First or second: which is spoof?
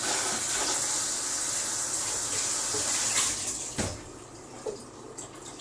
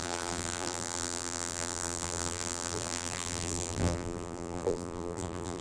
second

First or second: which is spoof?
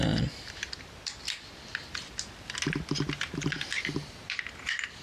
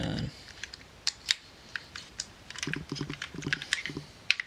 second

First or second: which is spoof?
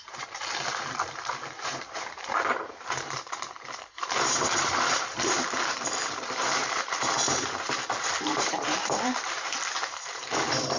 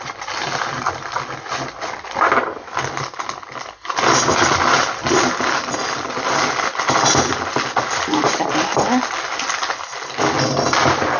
first